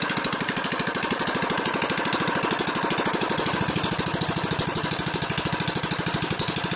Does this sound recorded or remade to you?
recorded